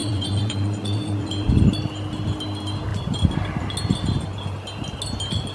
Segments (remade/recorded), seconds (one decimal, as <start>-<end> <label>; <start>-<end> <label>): 0.0-1.6 remade; 1.6-5.5 recorded